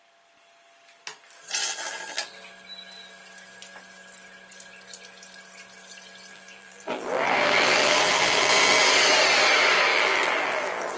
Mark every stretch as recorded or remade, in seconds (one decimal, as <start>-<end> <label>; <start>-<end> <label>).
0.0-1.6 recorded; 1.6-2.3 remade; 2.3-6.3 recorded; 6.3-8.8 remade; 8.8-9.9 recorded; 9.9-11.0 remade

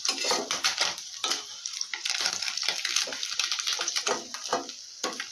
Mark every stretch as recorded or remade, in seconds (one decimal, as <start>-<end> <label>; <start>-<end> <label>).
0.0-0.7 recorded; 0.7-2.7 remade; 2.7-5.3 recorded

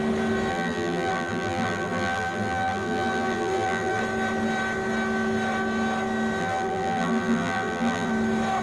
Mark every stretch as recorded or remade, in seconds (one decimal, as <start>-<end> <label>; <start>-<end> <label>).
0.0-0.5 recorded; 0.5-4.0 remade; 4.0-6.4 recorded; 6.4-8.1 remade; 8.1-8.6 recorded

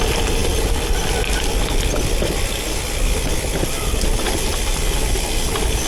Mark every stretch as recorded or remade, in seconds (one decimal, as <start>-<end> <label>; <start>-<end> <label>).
0.0-5.9 recorded

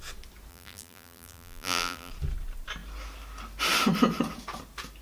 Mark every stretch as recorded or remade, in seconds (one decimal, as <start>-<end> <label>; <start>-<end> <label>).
0.0-0.5 recorded; 0.5-2.1 remade; 2.1-5.0 recorded

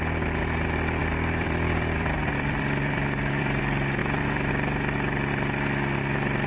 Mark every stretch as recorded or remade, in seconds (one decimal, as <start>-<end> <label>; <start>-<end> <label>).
0.0-1.0 recorded; 1.0-3.6 remade; 3.6-4.0 recorded; 4.0-4.5 remade; 4.5-6.5 recorded

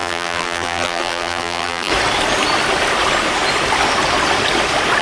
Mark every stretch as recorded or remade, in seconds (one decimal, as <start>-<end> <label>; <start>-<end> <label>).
0.0-1.9 remade; 1.9-5.0 recorded

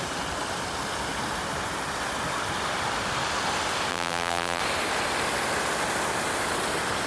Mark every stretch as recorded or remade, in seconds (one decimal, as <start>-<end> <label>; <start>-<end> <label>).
0.0-3.9 recorded; 3.9-4.6 remade; 4.6-7.1 recorded